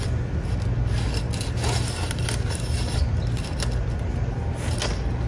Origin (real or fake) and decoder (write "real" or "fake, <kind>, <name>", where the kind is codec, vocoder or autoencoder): real